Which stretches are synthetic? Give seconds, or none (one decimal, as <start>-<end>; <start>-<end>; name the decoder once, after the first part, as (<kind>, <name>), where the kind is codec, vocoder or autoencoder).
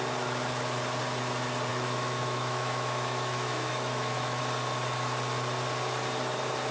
1.7-4.4 (autoencoder, DAC-VAE)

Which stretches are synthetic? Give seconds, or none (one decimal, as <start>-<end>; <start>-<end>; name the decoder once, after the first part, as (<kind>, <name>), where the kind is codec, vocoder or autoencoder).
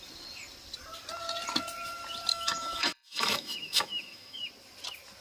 2.3-4.5 (autoencoder, DAC-VAE)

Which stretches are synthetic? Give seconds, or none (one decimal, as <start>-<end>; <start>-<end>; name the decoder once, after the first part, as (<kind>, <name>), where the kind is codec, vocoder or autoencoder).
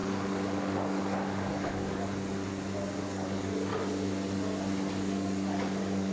0.0-2.1 (codec, DAC); 3.0-3.7; 4.9-6.1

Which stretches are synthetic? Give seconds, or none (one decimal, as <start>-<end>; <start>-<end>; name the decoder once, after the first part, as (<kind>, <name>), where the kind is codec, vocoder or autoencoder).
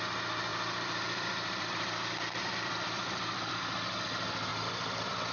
0.5-3.5 (vocoder, BigVGAN v2); 4.5-5.3